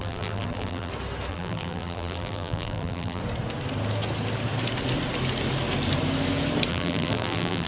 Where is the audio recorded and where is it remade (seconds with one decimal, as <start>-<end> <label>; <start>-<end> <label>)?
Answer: 0.0-0.9 remade; 0.9-1.3 recorded; 1.3-3.2 remade; 3.2-6.7 recorded; 6.7-7.7 remade